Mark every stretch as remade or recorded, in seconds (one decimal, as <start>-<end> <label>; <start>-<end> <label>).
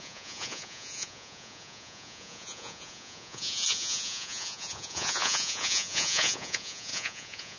0.0-7.6 remade